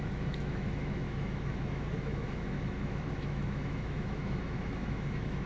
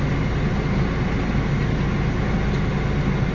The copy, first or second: first